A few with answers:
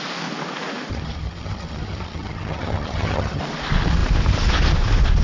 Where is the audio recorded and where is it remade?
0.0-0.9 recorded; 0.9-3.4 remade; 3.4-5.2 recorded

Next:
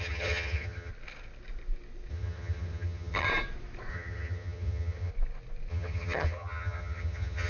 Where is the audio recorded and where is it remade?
0.0-0.9 remade; 0.9-2.1 recorded; 2.1-3.3 remade; 3.3-3.9 recorded; 3.9-5.1 remade; 5.1-5.7 recorded; 5.7-7.5 remade

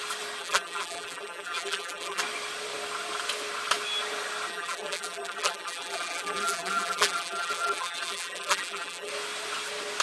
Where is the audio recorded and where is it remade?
0.0-0.4 recorded; 0.4-2.2 remade; 2.2-4.5 recorded; 4.5-9.1 remade; 9.1-10.0 recorded